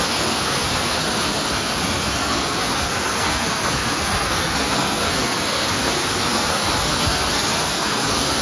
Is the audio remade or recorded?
remade